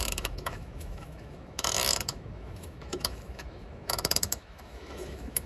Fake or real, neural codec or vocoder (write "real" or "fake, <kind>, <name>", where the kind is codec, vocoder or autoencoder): fake, autoencoder, DAC-VAE